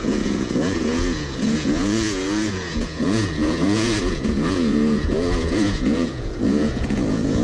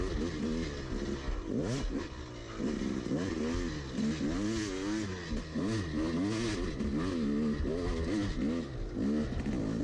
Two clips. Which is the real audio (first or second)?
second